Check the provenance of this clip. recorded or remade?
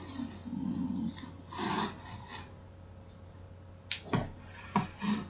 recorded